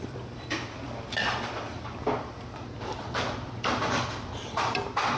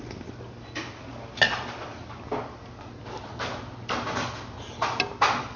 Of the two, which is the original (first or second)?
second